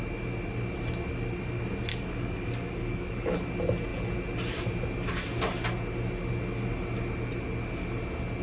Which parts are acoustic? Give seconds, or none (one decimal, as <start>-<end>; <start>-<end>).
0.0-1.9; 3.5-8.4